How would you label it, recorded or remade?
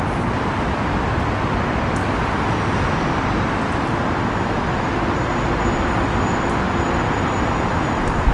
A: recorded